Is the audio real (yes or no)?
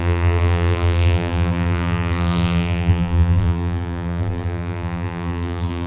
no